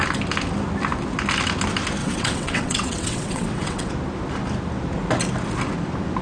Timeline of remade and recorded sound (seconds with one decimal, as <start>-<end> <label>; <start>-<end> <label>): 0.0-2.0 recorded; 2.0-3.9 remade; 3.9-6.2 recorded